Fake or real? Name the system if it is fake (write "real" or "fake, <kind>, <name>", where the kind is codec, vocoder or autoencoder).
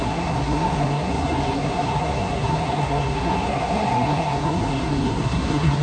fake, codec, SNAC